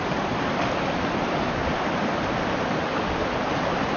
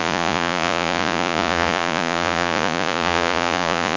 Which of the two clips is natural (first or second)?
first